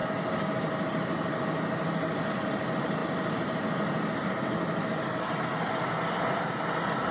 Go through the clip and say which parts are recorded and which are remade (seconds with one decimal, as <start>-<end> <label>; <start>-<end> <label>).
0.0-7.1 recorded